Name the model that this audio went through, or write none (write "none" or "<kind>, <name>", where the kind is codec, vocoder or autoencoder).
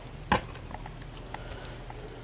none